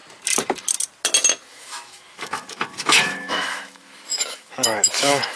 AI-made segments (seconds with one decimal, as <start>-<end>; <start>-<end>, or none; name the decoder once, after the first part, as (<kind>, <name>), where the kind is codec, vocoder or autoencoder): 1.5-5.4 (autoencoder, DAC-VAE)